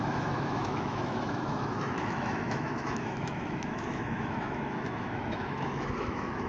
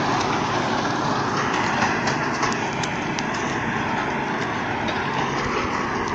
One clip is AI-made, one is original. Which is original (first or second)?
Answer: second